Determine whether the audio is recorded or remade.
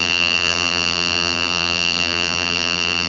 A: remade